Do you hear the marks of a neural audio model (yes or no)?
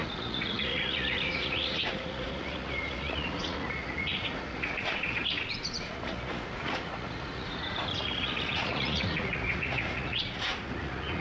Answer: yes